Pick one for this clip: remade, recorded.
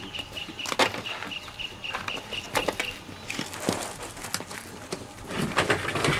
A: recorded